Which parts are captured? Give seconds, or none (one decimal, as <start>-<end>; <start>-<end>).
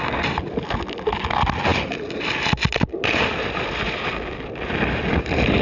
0.0-5.6